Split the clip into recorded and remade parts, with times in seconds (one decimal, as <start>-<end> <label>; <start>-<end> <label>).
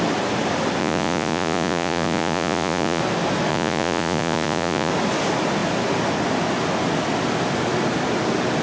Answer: 0.0-0.8 recorded; 0.8-3.0 remade; 3.0-3.5 recorded; 3.5-4.9 remade; 4.9-8.6 recorded